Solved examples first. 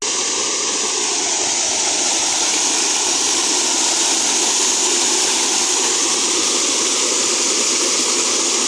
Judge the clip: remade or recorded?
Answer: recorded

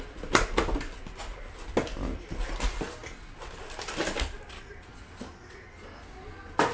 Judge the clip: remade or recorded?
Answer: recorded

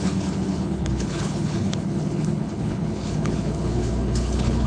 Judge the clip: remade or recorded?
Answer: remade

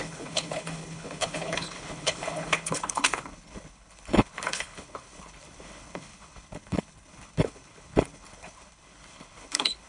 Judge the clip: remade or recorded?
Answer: remade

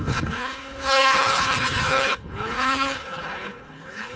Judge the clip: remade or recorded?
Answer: remade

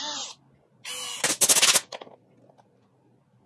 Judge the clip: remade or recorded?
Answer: recorded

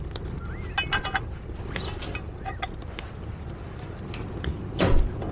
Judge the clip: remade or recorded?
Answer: recorded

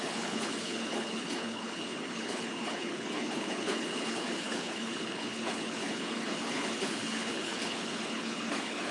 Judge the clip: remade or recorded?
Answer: remade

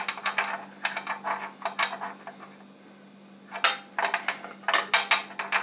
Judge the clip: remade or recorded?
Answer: recorded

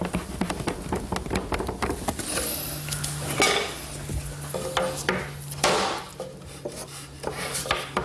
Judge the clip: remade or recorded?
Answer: recorded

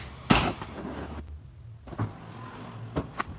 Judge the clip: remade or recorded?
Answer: recorded